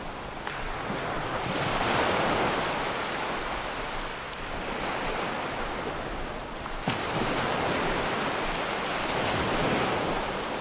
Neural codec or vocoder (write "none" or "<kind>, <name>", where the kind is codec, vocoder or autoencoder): none